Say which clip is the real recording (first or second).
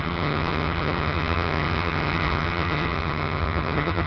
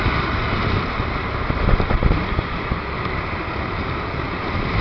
second